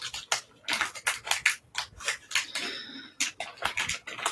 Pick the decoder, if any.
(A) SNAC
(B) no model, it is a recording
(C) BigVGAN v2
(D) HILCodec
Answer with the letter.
B